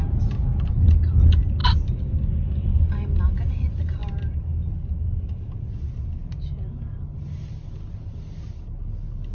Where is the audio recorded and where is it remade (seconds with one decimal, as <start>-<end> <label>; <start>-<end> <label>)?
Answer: 0.0-9.3 recorded